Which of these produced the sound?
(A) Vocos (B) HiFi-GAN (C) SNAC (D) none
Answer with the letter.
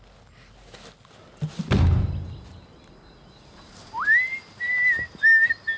D